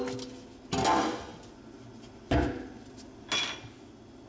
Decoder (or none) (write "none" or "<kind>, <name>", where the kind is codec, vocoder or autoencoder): none